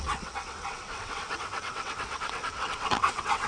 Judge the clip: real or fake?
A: fake